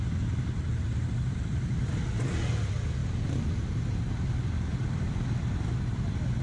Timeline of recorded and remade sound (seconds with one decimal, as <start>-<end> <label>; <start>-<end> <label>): 0.0-0.9 recorded; 0.9-2.5 remade; 2.5-3.0 recorded; 3.0-3.5 remade; 3.5-4.7 recorded; 4.7-5.5 remade; 5.5-6.4 recorded